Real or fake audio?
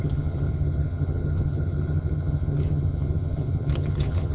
fake